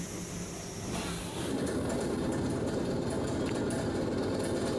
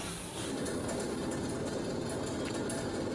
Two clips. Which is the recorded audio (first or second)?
second